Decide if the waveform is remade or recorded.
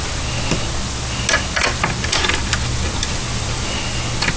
recorded